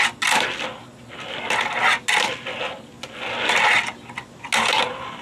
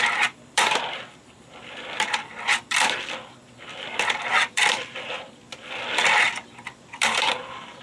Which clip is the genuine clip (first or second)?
first